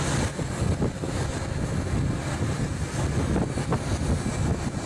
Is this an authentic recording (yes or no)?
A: yes